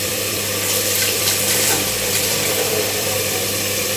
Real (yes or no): no